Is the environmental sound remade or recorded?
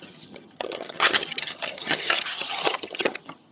remade